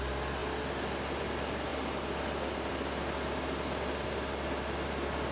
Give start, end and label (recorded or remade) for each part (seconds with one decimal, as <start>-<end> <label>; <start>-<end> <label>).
0.0-5.3 recorded